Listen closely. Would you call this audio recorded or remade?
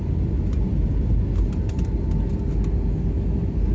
recorded